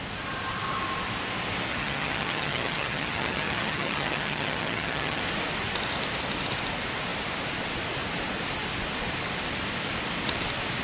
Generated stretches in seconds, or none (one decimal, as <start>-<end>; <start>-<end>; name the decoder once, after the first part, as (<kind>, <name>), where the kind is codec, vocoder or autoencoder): 1.7-5.2 (vocoder, HiFi-GAN)